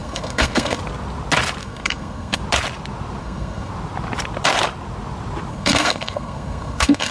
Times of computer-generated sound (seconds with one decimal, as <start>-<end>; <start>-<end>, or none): 0.0-0.8; 1.6-2.4; 3.2-3.7; 5.5-7.1

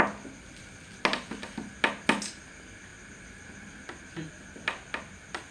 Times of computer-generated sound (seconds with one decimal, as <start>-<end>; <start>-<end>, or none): none